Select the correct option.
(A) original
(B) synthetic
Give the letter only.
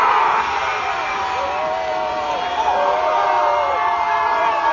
A